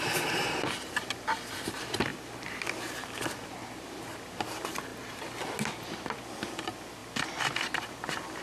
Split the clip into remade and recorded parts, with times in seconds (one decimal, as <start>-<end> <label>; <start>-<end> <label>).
0.0-8.4 recorded